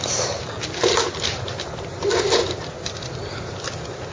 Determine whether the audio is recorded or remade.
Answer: recorded